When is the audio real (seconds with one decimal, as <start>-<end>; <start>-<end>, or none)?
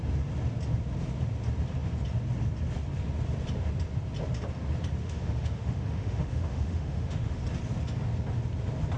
0.0-5.0; 7.4-9.0